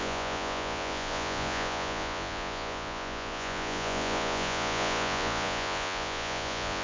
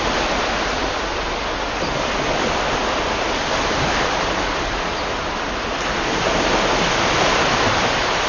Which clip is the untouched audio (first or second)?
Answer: second